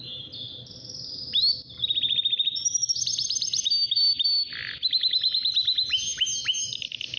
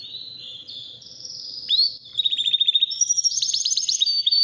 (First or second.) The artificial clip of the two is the second